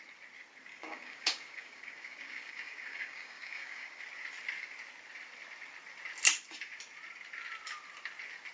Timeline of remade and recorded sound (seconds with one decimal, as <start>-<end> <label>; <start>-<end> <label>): 0.0-0.7 recorded; 0.7-4.0 remade; 4.0-8.5 recorded